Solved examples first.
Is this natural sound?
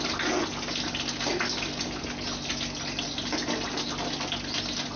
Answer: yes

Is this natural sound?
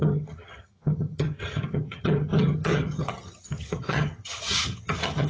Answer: no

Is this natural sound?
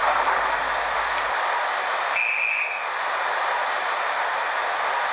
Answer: yes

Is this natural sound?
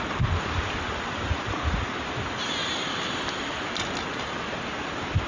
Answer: yes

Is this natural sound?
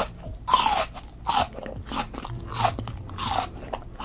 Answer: yes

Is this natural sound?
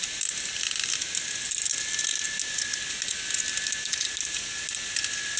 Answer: yes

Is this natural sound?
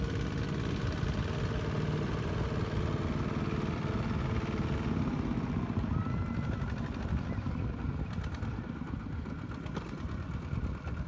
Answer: yes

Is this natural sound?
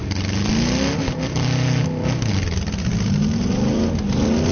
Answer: yes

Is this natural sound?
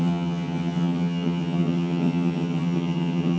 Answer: no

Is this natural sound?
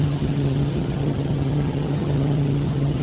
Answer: no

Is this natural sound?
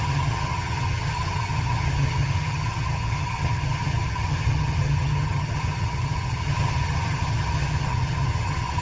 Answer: no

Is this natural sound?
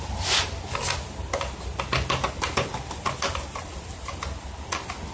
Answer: yes